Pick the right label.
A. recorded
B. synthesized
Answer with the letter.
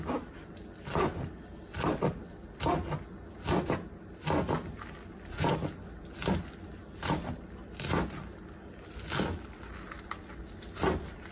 A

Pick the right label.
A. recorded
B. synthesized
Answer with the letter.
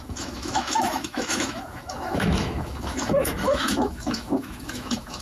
B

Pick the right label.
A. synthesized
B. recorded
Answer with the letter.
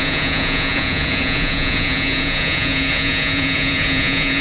A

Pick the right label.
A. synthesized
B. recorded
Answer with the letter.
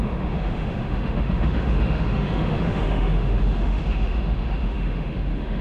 A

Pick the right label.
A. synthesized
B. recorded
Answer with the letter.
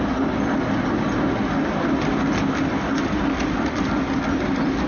B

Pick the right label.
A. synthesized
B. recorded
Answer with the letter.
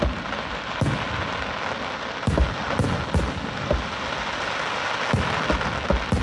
B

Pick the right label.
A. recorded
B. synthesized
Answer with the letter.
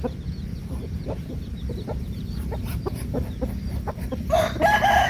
A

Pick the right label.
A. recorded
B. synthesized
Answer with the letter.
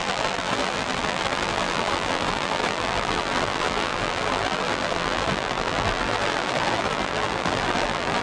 B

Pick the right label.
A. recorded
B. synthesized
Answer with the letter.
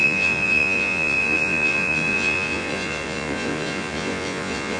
B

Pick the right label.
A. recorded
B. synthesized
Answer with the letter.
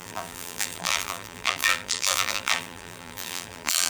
B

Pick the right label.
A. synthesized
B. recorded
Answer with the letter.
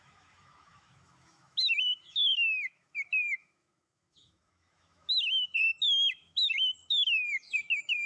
A